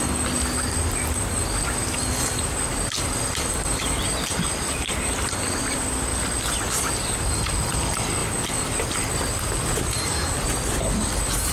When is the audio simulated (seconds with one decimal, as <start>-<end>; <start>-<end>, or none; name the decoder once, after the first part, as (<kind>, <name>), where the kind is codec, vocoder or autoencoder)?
2.7-3.9 (vocoder, BigVGAN v2)